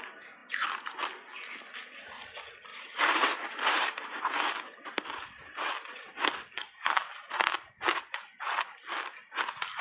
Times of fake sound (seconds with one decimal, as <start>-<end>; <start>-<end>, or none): 2.7-5.7; 7.9-8.4